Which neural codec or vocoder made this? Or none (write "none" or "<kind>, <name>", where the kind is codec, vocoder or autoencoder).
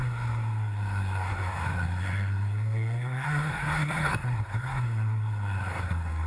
codec, SNAC